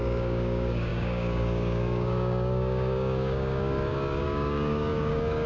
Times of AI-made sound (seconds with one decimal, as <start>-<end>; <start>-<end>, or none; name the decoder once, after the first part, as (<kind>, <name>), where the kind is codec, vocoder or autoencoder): 0.0-5.5 (codec, DAC)